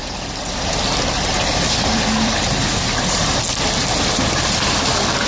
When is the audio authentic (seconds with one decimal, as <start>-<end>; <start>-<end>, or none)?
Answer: 3.2-5.3